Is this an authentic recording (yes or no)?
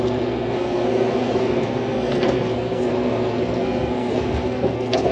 no